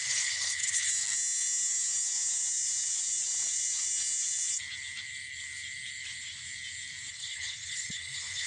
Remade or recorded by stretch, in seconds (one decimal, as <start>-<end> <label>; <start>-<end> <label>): 0.0-0.9 remade; 0.9-7.1 recorded; 7.1-8.5 remade